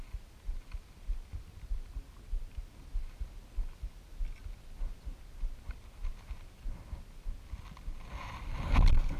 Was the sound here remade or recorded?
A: recorded